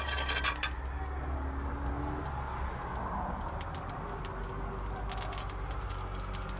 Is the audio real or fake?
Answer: real